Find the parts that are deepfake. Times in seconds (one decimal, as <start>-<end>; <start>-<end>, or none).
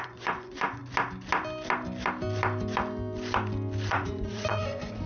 0.0-0.8; 3.9-5.1